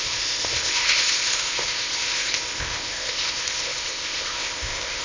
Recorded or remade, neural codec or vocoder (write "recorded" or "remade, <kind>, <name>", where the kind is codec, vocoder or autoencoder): remade, codec, ZipCodec